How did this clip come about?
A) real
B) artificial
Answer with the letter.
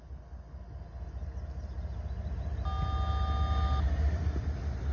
A